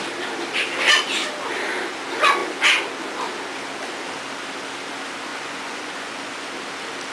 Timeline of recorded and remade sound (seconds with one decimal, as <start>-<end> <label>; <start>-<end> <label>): 0.0-5.3 recorded; 5.3-6.5 remade; 6.5-7.1 recorded